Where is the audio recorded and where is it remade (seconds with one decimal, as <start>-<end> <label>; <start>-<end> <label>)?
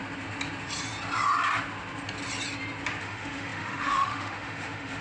0.0-3.0 recorded; 3.0-5.0 remade